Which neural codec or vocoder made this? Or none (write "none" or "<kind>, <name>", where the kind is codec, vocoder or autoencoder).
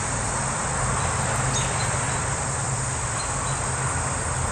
none